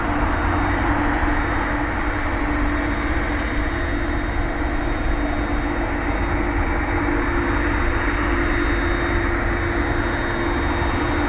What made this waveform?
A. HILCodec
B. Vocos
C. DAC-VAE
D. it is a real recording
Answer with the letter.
D